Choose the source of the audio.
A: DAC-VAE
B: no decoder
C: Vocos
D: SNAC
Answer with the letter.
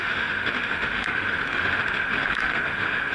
A